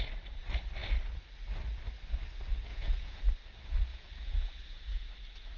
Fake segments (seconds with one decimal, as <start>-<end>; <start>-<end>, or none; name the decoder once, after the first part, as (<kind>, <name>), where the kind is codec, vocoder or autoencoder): 2.7-3.2 (vocoder, Vocos); 3.9-5.1